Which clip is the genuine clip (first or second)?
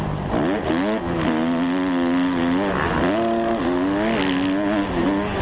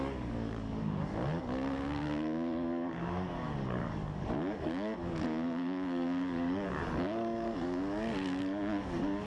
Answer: first